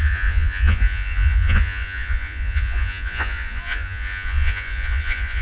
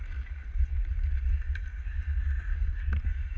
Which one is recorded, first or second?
second